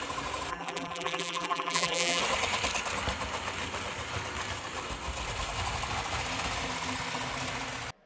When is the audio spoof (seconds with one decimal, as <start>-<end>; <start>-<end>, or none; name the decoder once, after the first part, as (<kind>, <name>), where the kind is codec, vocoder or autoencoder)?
0.5-2.2 (vocoder, BigVGAN v2)